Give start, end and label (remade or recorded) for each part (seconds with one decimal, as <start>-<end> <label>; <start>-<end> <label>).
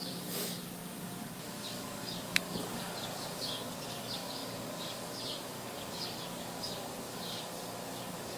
0.0-8.4 remade